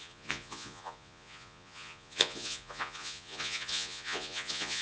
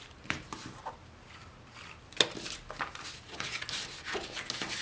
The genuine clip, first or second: second